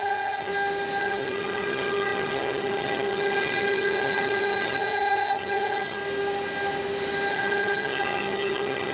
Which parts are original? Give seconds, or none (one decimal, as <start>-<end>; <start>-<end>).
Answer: 0.5-1.0; 6.0-7.3